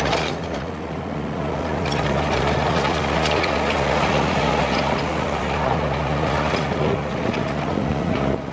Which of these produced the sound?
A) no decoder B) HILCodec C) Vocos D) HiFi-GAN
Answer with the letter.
C